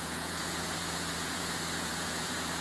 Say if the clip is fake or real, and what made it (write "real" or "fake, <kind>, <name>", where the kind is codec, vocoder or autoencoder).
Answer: fake, vocoder, Vocos